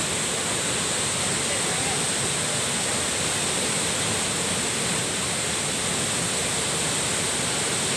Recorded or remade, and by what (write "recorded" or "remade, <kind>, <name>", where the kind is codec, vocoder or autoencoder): recorded